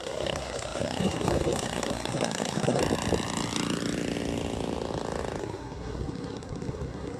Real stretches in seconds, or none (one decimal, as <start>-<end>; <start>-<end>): 2.8-5.4